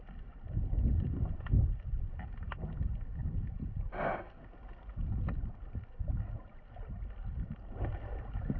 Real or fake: real